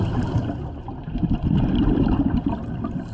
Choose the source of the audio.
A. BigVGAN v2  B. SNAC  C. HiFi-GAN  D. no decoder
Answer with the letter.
A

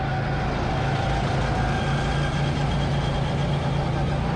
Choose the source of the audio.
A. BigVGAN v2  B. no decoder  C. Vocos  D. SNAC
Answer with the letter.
B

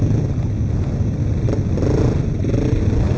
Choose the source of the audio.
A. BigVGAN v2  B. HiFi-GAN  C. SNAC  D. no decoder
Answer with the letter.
D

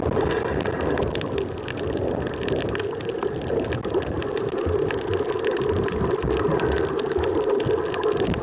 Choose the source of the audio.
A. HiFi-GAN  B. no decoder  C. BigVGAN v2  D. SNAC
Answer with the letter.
C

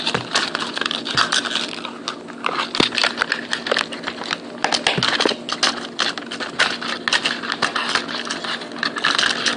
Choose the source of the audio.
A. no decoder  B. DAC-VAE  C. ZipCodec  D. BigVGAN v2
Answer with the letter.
A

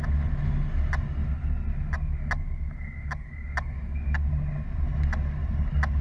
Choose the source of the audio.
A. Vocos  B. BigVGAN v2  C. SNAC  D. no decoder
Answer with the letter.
D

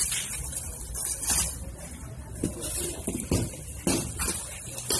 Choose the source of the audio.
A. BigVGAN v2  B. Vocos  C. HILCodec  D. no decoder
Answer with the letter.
A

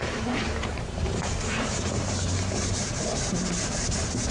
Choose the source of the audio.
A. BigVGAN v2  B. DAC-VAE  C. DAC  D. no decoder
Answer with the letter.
A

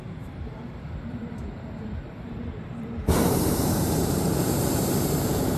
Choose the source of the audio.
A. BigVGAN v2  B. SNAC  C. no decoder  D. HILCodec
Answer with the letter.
A